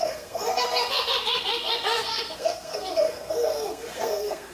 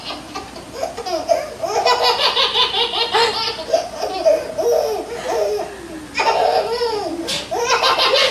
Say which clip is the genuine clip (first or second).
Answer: second